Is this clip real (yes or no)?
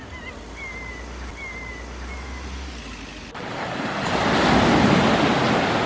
yes